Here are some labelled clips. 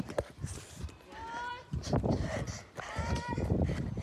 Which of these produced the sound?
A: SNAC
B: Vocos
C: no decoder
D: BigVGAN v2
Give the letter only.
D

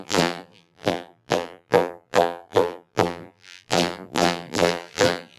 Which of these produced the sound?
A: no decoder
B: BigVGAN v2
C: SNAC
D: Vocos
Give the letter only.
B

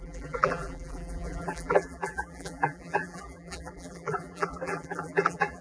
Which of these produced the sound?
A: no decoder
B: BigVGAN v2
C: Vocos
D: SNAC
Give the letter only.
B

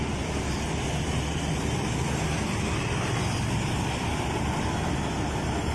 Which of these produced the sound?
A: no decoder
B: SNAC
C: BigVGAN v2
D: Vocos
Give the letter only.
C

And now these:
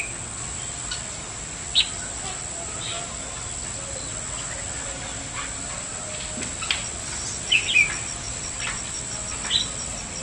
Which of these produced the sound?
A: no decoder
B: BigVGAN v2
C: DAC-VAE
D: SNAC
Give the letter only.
A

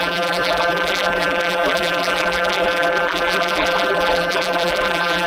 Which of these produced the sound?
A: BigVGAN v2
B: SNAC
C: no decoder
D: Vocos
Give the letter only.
A